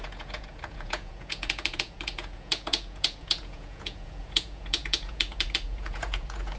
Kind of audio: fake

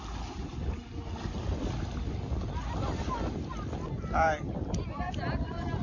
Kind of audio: real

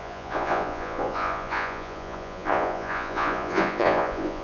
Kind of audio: fake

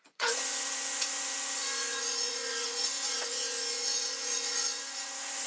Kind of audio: fake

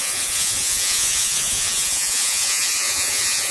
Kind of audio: fake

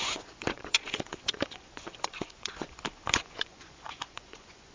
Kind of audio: fake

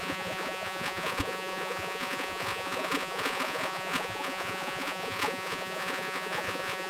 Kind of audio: fake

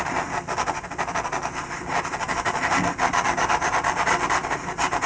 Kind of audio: real